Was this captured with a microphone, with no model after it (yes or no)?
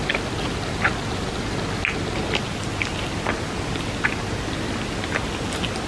yes